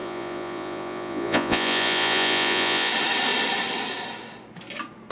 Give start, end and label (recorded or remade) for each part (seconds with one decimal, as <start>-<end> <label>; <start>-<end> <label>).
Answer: 0.0-2.9 remade; 2.9-5.1 recorded